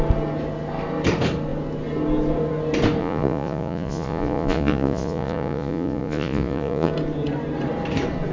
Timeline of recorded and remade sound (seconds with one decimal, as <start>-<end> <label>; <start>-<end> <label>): 0.0-3.0 recorded; 3.0-6.9 remade; 6.9-8.3 recorded